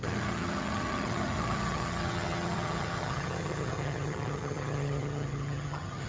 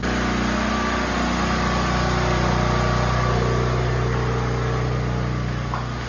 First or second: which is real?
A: second